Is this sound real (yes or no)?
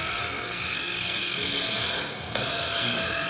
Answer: no